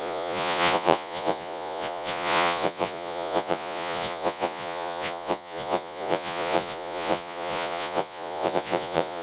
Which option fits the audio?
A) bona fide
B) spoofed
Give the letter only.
B